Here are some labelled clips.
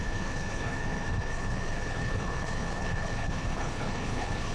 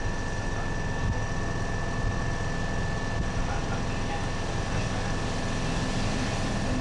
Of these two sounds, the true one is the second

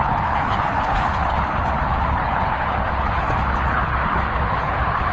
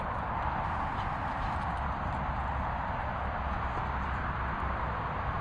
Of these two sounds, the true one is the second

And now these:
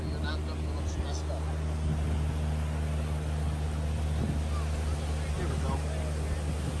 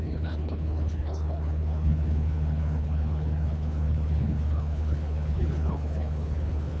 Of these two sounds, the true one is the first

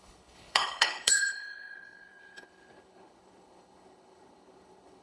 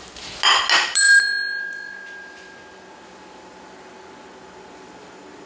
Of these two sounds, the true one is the second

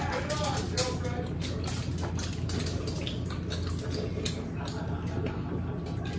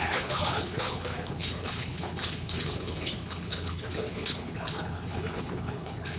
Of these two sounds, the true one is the first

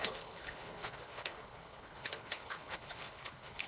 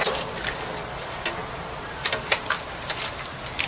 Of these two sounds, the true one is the second